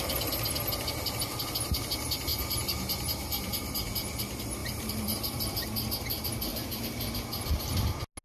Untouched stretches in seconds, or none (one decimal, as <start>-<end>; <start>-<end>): 0.0-2.3; 3.7-4.6; 5.4-6.5; 7.7-8.2